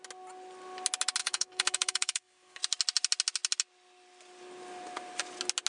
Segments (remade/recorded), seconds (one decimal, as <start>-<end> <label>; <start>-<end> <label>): 0.0-1.2 recorded; 1.2-2.6 remade; 2.6-5.7 recorded

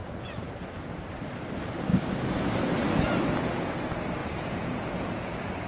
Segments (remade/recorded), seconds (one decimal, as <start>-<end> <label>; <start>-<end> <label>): 0.0-1.0 remade; 1.0-4.2 recorded; 4.2-5.3 remade; 5.3-5.7 recorded

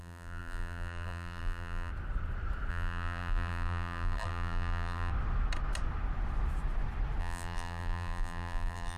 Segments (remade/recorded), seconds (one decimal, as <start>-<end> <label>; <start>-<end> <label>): 0.0-1.9 remade; 1.9-2.7 recorded; 2.7-5.1 remade; 5.1-7.2 recorded; 7.2-9.0 remade

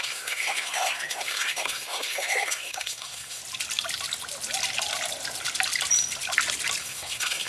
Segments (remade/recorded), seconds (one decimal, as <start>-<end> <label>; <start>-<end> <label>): 0.0-3.4 remade; 3.4-6.8 recorded; 6.8-7.5 remade